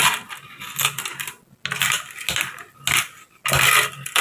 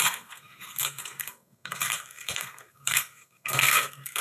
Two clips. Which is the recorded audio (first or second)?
first